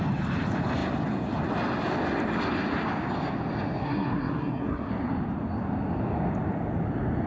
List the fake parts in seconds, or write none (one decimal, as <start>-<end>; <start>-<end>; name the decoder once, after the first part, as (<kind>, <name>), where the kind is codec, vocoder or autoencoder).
3.8-4.9 (codec, SNAC)